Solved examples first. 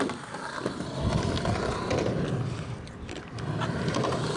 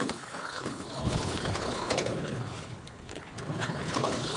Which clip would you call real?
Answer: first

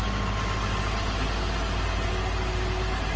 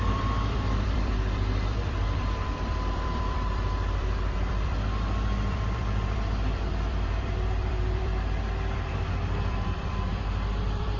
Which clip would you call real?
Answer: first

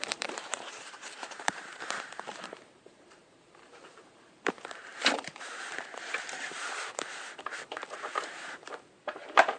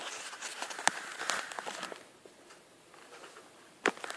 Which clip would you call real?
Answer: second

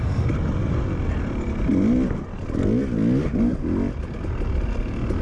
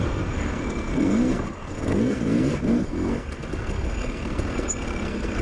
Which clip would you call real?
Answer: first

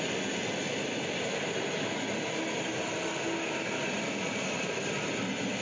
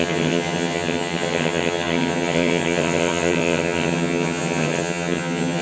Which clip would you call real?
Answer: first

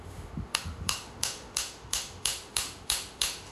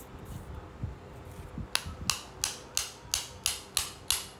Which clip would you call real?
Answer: second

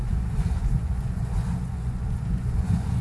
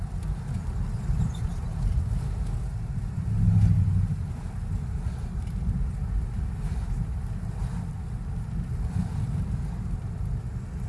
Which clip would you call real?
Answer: second